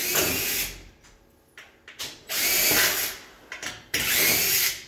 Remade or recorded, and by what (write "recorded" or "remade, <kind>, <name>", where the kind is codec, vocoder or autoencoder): recorded